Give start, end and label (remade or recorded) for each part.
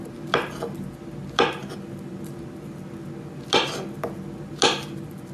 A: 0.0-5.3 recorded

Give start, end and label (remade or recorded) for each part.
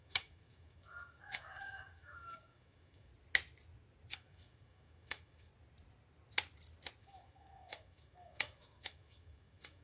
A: 0.0-3.1 remade; 3.1-4.1 recorded; 4.1-5.5 remade; 5.5-7.0 recorded; 7.0-9.8 remade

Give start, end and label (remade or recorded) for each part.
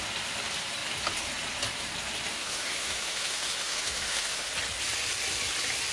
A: 0.0-2.3 recorded; 2.3-4.5 remade; 4.5-5.9 recorded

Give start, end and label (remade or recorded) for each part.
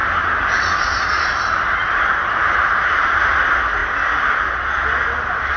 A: 0.0-3.4 remade; 3.4-5.6 recorded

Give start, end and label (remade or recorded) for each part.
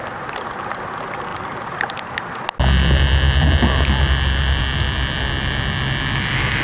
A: 0.0-6.6 recorded